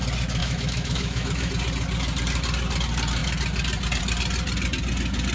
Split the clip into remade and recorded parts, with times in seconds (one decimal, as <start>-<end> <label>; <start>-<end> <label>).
0.0-0.4 recorded; 0.4-1.5 remade; 1.5-5.3 recorded